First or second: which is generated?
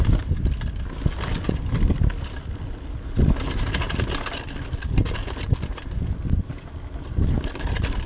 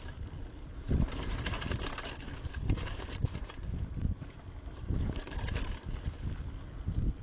second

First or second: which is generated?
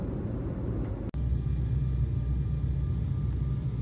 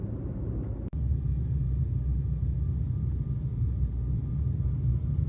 second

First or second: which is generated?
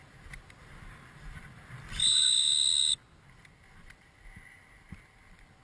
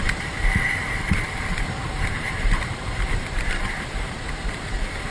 second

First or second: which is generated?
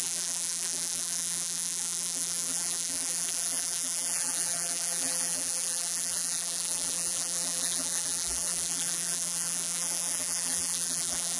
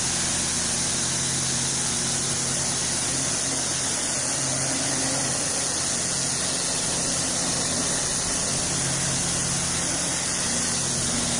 first